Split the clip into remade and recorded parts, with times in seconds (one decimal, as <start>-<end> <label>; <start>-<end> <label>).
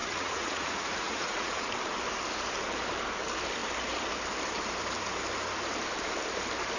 0.0-1.7 remade; 1.7-6.8 recorded